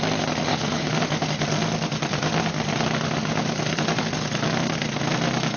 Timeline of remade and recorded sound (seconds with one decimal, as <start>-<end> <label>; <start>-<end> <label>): 0.0-0.5 recorded; 0.5-1.0 remade; 1.0-5.6 recorded